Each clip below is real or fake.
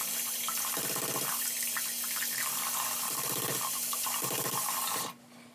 real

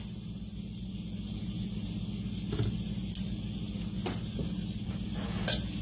real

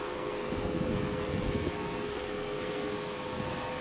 fake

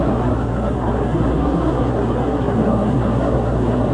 fake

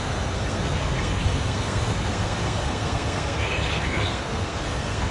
fake